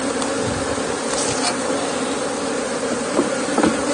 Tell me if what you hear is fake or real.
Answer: real